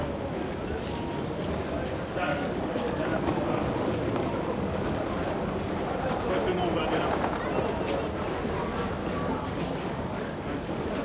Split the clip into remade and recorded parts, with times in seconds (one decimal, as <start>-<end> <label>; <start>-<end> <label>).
0.0-2.3 recorded; 2.3-5.7 remade; 5.7-9.0 recorded; 9.0-11.0 remade